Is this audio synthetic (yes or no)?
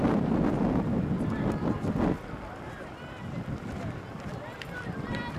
no